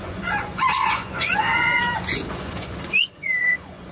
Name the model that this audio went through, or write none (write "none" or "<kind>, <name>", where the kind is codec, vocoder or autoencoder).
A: vocoder, Vocos